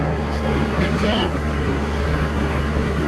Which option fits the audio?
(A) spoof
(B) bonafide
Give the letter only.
A